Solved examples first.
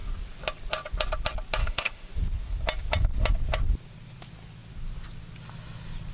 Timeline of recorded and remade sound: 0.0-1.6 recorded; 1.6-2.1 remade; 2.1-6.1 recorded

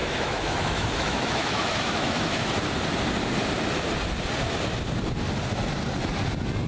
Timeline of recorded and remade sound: 0.0-2.5 remade; 2.5-6.7 recorded